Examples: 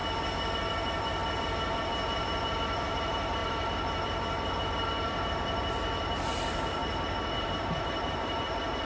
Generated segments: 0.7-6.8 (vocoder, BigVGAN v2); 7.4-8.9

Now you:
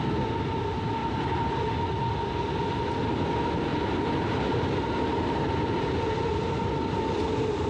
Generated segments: 1.0-2.0 (vocoder, BigVGAN v2); 3.7-7.1